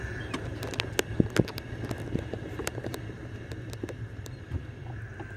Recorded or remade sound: recorded